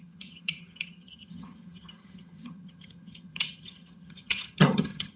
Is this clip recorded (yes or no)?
no